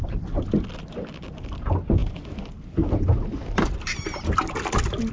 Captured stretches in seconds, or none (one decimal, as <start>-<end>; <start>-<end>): 0.0-5.1